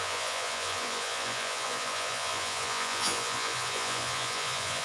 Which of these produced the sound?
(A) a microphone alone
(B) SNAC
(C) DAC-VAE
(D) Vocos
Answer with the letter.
D